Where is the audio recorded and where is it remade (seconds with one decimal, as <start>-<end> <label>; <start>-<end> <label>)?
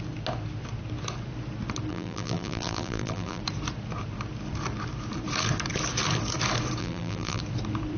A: 0.0-1.9 recorded; 1.9-3.4 remade; 3.4-6.8 recorded; 6.8-7.4 remade; 7.4-8.0 recorded